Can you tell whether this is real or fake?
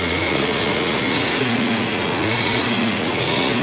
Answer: fake